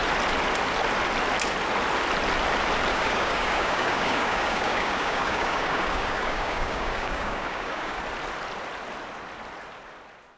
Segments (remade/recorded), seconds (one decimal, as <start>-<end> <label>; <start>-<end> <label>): 0.0-2.9 recorded; 2.9-8.0 remade; 8.0-10.4 recorded

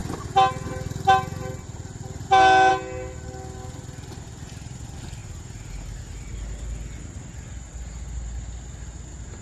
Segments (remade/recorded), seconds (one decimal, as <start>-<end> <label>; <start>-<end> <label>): 0.0-9.4 recorded

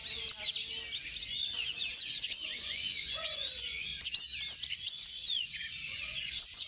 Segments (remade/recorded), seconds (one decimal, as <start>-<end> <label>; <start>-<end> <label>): 0.0-1.2 recorded; 1.2-3.9 remade; 3.9-4.7 recorded; 4.7-6.7 remade